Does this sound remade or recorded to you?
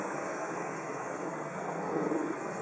remade